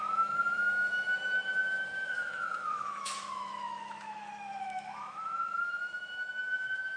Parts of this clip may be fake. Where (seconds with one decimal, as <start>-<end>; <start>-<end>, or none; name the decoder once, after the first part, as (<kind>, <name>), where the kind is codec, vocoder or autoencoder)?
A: 0.0-7.0 (autoencoder, DAC-VAE)